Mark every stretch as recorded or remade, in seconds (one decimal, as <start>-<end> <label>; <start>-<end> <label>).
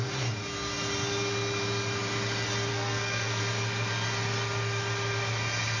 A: 0.0-2.7 recorded; 2.7-3.4 remade; 3.4-5.8 recorded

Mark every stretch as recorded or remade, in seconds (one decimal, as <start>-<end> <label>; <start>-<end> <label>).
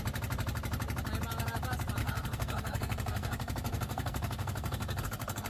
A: 0.0-2.0 recorded; 2.0-5.5 remade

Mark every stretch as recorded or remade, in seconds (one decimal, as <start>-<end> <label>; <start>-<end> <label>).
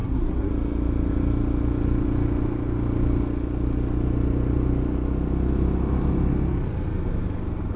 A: 0.0-0.5 remade; 0.5-7.8 recorded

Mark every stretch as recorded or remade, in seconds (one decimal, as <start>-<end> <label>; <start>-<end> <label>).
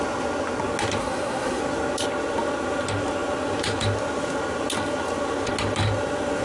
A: 0.0-1.0 recorded; 1.0-1.6 remade; 1.6-6.4 recorded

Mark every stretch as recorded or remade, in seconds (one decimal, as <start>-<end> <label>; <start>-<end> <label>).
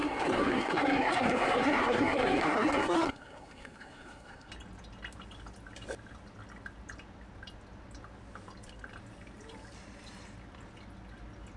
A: 0.0-4.5 remade; 4.5-11.6 recorded